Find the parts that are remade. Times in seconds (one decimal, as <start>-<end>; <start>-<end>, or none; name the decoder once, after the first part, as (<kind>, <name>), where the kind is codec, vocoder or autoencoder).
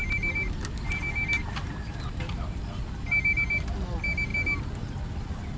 none